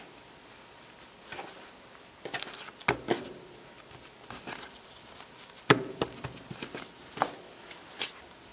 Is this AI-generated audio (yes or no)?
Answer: no